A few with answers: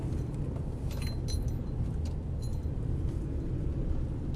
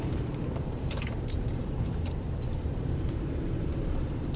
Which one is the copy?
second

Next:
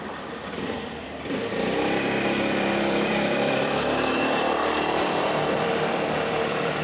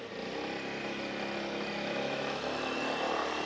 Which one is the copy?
first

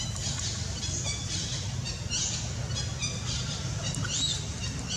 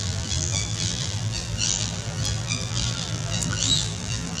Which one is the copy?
second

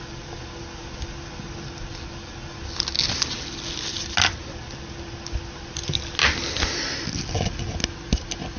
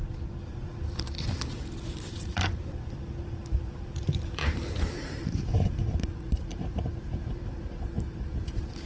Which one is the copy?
second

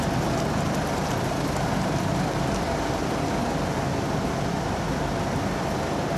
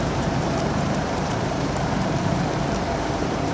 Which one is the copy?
second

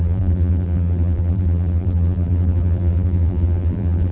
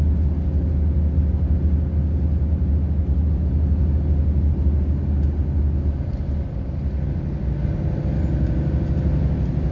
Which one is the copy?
first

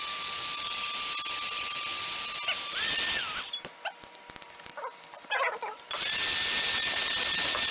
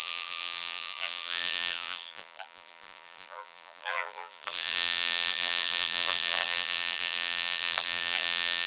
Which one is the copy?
second